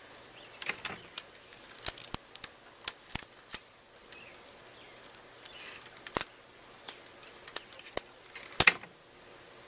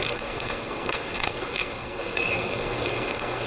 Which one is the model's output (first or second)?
second